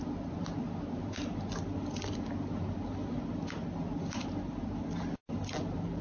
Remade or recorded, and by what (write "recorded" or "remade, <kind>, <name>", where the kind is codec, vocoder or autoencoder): recorded